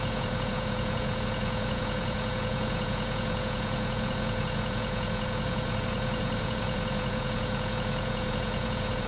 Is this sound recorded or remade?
remade